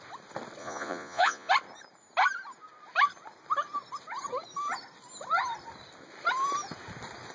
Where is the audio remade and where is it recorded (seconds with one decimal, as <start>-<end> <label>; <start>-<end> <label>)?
0.0-0.6 recorded; 0.6-1.5 remade; 1.5-7.3 recorded